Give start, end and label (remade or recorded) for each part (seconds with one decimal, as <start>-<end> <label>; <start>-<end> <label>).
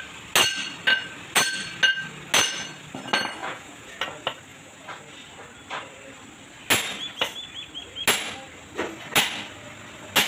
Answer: 0.0-3.4 recorded; 3.4-4.0 remade; 4.0-4.5 recorded; 4.5-5.0 remade; 5.0-10.3 recorded